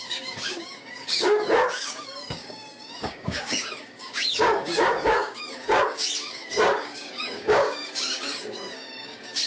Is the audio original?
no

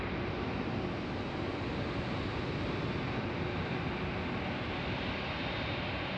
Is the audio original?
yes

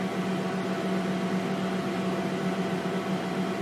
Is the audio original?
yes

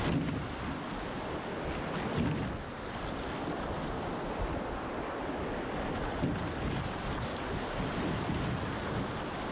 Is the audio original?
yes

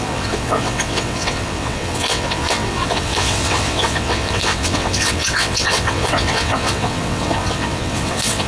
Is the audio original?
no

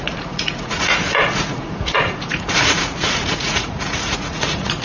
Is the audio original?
no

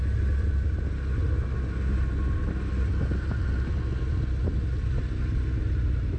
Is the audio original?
yes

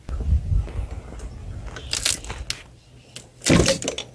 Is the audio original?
yes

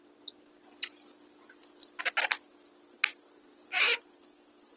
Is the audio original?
yes